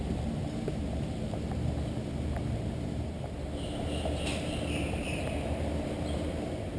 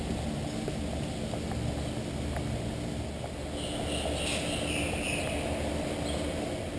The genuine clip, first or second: second